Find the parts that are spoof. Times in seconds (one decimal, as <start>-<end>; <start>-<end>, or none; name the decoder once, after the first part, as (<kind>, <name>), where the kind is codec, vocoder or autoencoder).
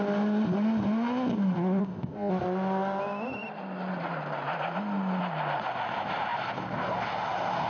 1.8-2.3 (codec, ZipCodec)